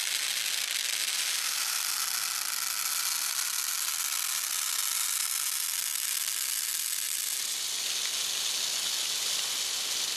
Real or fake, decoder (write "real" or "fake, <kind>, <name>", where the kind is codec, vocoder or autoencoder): real